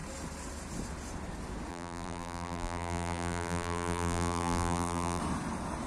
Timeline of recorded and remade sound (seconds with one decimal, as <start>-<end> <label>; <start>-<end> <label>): 0.0-1.7 recorded; 1.7-5.2 remade; 5.2-5.9 recorded